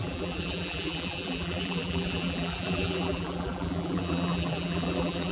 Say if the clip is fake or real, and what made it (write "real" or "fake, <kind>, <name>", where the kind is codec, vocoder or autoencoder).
fake, vocoder, BigVGAN v2